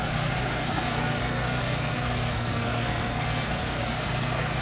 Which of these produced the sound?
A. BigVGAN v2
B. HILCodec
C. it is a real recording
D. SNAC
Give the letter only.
D